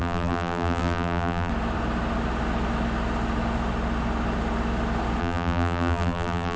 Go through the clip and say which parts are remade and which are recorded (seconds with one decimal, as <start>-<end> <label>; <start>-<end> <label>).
0.0-1.5 remade; 1.5-5.2 recorded; 5.2-6.6 remade